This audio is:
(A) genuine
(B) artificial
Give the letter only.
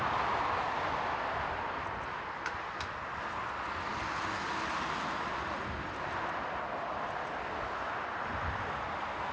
A